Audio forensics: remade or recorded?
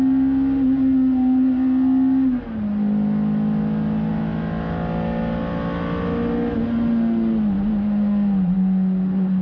recorded